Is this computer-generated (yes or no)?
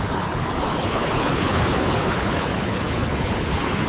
yes